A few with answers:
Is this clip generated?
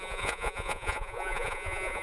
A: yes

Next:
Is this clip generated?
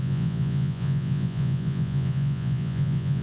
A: yes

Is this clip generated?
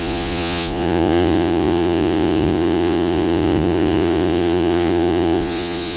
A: yes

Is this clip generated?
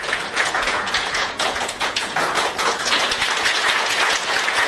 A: yes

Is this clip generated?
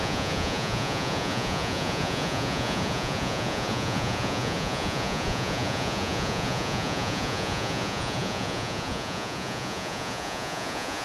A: yes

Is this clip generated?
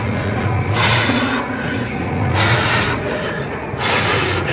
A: yes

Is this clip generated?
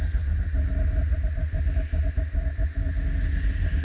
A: no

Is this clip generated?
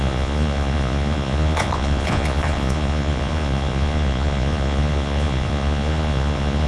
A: yes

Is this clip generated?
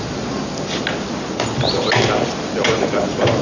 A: no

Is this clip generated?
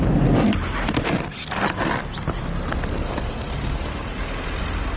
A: no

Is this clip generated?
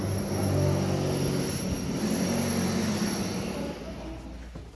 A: no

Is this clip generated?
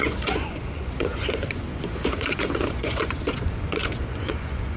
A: yes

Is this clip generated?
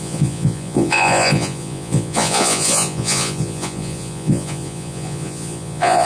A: yes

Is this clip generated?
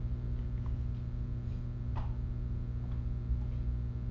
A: no